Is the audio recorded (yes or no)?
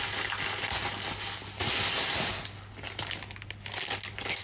yes